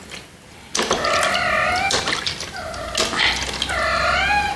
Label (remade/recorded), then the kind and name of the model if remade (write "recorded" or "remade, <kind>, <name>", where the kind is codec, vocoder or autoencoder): recorded